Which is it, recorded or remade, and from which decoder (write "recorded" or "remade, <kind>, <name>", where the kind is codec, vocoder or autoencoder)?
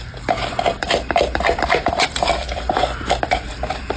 remade, vocoder, BigVGAN v2